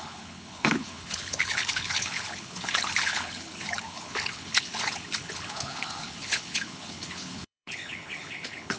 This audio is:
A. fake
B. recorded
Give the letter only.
A